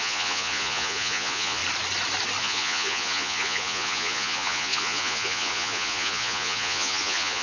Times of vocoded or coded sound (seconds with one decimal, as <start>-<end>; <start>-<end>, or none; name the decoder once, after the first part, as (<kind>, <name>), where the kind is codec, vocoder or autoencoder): 0.0-1.6 (vocoder, Vocos); 2.4-7.4